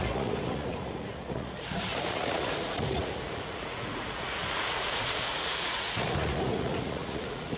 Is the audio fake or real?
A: fake